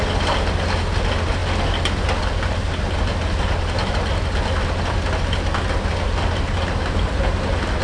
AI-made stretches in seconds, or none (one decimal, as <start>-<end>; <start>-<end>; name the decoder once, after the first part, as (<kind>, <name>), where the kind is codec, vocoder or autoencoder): none